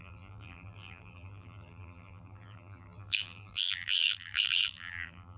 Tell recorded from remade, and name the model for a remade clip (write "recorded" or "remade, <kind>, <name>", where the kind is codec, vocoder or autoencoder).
remade, vocoder, BigVGAN v2